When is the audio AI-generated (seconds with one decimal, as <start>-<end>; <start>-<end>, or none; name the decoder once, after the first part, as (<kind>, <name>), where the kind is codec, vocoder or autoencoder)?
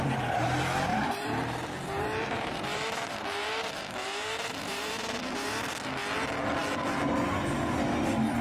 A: 0.9-5.7 (vocoder, BigVGAN v2)